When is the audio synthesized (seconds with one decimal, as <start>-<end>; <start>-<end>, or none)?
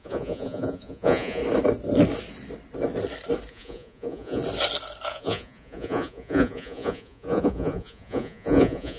0.0-1.4; 3.5-4.4; 5.1-9.0